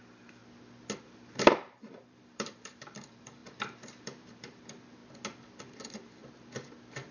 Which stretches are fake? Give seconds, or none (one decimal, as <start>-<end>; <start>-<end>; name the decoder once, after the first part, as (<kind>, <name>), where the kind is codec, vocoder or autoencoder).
0.0-0.4 (vocoder, BigVGAN v2); 1.0-5.0; 5.6-6.2